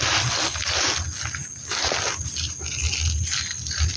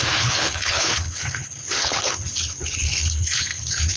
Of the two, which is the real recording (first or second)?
first